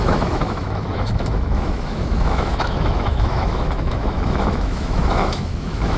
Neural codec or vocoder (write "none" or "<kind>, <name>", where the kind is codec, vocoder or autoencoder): autoencoder, DAC-VAE